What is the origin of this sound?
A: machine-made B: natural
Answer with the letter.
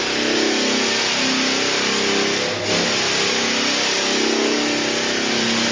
B